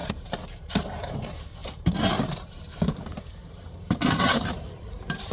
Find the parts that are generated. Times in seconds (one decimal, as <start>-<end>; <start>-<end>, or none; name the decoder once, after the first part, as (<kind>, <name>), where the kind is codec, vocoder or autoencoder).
0.8-5.3 (vocoder, BigVGAN v2)